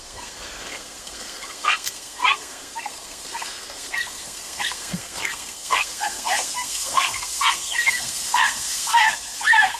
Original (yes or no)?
no